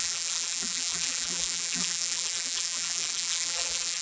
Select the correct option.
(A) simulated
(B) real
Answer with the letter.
A